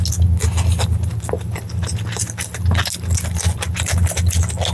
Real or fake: real